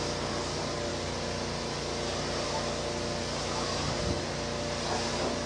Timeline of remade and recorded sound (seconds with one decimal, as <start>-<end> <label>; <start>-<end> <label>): 0.0-5.5 recorded